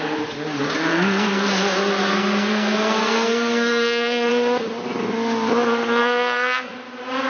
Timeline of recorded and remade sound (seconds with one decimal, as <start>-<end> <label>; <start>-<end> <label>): 0.0-0.9 recorded; 0.9-1.5 remade; 1.5-2.0 recorded; 2.0-4.3 remade; 4.3-6.0 recorded; 6.0-6.7 remade; 6.7-7.3 recorded